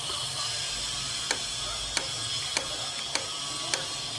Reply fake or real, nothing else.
real